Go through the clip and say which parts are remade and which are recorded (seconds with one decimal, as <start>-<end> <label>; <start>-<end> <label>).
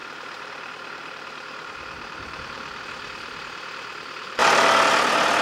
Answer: 0.0-2.8 remade; 2.8-5.4 recorded